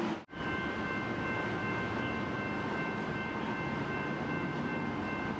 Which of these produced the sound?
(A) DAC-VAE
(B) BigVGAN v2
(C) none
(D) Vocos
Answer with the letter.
C